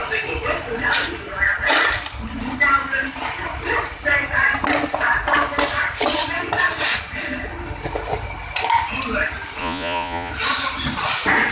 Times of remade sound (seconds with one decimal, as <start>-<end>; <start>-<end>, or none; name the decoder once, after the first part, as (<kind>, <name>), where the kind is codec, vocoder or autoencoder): 9.6-10.3 (vocoder, Vocos)